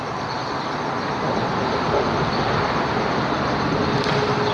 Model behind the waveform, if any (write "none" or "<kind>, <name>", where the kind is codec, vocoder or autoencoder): none